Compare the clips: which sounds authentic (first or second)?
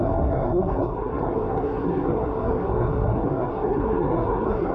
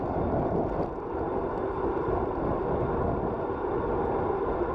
second